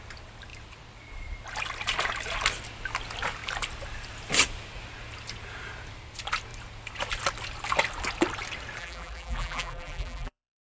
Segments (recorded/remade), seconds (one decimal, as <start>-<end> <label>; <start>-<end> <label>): 0.0-8.8 recorded; 8.8-10.7 remade